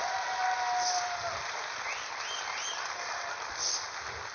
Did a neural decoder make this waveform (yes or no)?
no